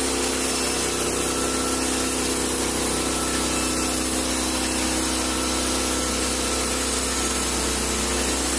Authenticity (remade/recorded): recorded